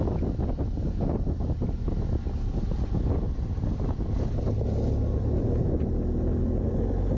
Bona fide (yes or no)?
yes